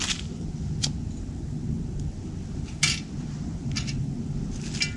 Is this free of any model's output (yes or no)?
yes